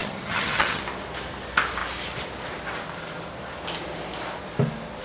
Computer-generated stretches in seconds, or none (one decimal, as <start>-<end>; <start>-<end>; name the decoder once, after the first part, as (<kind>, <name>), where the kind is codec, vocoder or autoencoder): 0.0-0.8 (vocoder, HiFi-GAN)